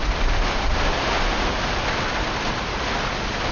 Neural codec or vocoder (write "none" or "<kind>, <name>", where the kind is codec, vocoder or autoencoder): none